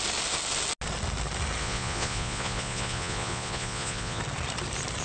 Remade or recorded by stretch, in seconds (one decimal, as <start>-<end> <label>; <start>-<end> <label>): 0.0-1.6 recorded; 1.6-4.2 remade; 4.2-5.0 recorded